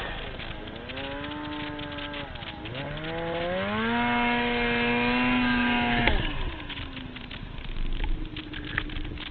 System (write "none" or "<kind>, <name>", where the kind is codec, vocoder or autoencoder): none